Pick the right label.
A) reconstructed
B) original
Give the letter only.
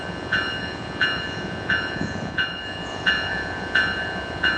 A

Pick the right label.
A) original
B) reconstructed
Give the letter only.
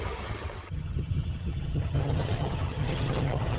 B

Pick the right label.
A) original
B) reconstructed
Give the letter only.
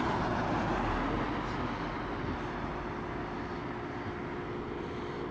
A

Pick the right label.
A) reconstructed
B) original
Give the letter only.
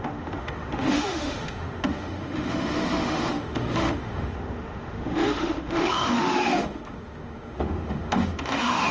A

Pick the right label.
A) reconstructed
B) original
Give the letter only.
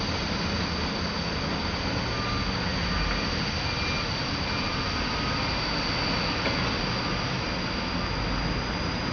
B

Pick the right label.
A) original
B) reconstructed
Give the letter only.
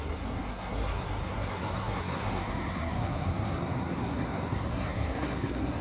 B